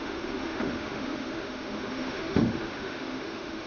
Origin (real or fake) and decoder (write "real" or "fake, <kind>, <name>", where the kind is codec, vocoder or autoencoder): fake, autoencoder, DAC-VAE